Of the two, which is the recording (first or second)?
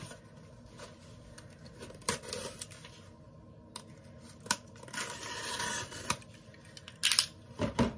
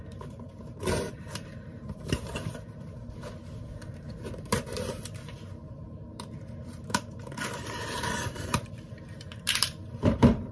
first